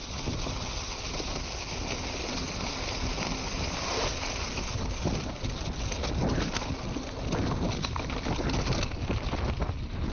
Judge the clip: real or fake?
real